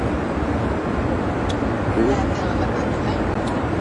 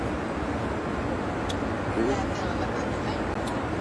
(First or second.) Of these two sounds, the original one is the second